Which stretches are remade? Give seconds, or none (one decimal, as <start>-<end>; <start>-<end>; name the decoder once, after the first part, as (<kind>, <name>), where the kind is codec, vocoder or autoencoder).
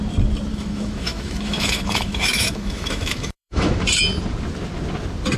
0.5-3.7 (autoencoder, DAC-VAE)